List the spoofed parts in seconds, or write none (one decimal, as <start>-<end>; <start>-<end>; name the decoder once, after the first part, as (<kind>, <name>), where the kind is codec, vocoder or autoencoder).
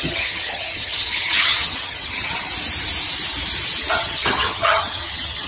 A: 0.0-2.5 (vocoder, HiFi-GAN); 4.0-5.5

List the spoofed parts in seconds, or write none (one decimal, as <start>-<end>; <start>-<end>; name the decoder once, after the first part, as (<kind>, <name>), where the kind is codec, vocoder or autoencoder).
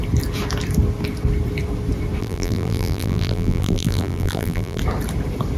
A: 2.2-4.8 (vocoder, BigVGAN v2)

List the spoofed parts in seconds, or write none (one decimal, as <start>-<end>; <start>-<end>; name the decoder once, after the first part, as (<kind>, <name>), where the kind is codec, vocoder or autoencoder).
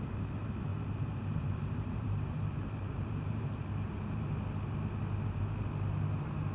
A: 0.7-4.3 (vocoder, BigVGAN v2)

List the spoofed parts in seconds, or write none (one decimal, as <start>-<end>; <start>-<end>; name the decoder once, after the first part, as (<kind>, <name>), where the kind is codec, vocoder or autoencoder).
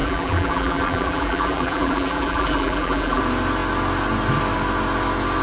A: 0.0-3.2 (vocoder, BigVGAN v2)